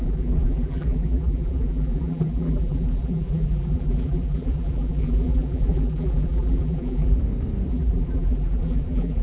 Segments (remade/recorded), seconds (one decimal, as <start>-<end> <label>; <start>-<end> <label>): 0.0-7.2 remade; 7.2-7.7 recorded; 7.7-9.2 remade

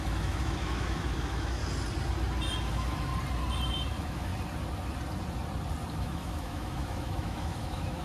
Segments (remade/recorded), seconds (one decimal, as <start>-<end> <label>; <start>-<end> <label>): 0.0-1.6 remade; 1.6-2.7 recorded; 2.7-3.1 remade; 3.1-3.9 recorded; 3.9-4.3 remade; 4.3-5.9 recorded; 5.9-8.0 remade

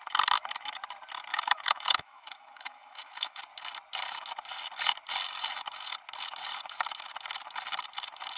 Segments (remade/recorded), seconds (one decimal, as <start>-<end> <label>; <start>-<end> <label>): 0.0-1.3 recorded; 1.3-3.4 remade; 3.4-8.4 recorded

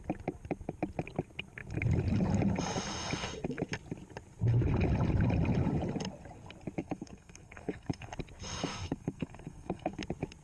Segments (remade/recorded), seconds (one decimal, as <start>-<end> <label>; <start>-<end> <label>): 0.0-6.8 recorded; 6.8-8.1 remade; 8.1-8.7 recorded; 8.7-10.0 remade; 10.0-10.4 recorded

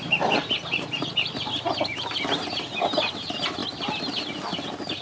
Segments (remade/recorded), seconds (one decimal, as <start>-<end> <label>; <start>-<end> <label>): 0.0-3.6 remade; 3.6-5.0 recorded